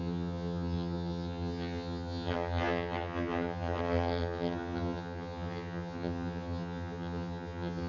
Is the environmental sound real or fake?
fake